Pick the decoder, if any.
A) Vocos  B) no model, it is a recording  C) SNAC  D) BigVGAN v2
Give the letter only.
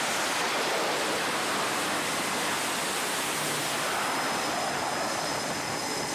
B